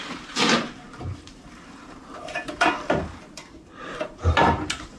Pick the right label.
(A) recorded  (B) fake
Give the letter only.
B